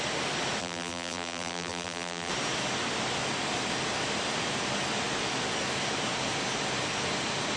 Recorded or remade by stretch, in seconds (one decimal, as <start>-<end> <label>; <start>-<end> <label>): 0.0-0.6 recorded; 0.6-2.3 remade; 2.3-7.6 recorded